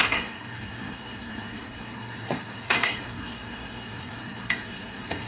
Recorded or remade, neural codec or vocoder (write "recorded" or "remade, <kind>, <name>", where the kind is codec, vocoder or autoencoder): remade, codec, SNAC